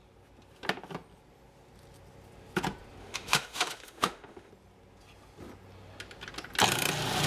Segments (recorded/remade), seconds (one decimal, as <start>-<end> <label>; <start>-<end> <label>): 0.0-3.0 recorded; 3.0-4.5 remade; 4.5-7.3 recorded